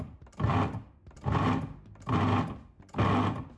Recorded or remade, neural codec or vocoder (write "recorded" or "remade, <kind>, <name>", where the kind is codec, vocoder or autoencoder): recorded